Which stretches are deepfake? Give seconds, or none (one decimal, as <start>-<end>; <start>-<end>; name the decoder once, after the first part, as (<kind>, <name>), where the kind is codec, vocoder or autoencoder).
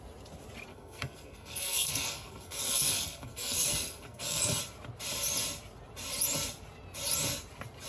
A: 0.7-4.6 (codec, SNAC)